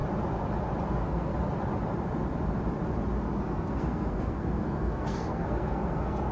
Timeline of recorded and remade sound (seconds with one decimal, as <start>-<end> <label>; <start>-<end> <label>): 0.0-0.9 recorded; 0.9-1.3 remade; 1.3-3.4 recorded; 3.4-6.3 remade